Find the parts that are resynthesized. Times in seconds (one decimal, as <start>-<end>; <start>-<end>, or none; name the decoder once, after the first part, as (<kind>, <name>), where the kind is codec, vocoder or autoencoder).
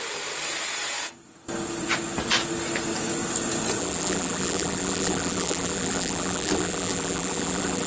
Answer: 3.8-7.9 (vocoder, BigVGAN v2)